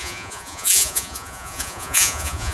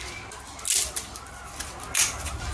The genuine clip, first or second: second